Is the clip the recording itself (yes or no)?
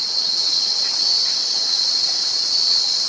no